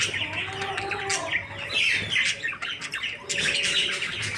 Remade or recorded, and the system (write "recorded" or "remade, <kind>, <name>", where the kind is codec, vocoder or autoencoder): recorded